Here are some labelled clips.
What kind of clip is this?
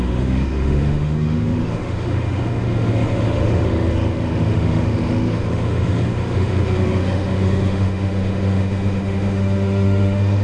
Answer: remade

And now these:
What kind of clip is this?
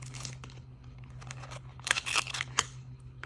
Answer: remade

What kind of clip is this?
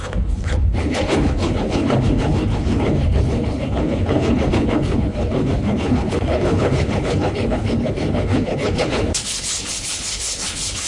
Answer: remade